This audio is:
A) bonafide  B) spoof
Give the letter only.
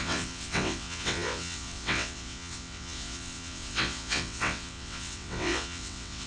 B